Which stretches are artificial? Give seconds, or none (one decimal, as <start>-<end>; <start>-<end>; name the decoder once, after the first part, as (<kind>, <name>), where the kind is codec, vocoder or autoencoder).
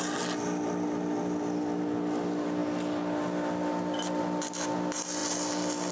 none